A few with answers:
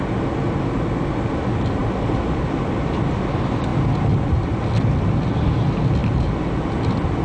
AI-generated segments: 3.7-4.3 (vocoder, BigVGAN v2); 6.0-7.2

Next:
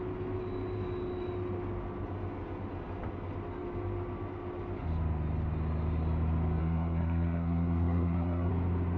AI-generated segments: 6.6-8.5 (codec, SNAC)

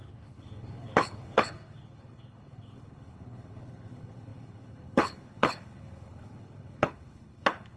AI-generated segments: 0.0-7.8 (codec, HILCodec)

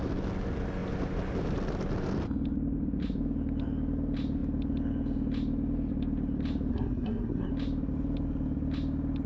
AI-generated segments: 6.7-7.5 (codec, SNAC)

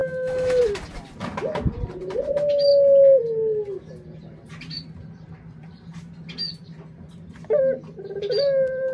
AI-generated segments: 0.0-0.6 (autoencoder, DAC-VAE)

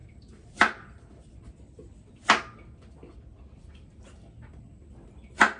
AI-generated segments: 0.0-2.1 (vocoder, BigVGAN v2)

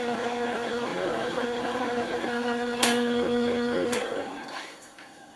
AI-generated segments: 0.0-5.4 (codec, SNAC)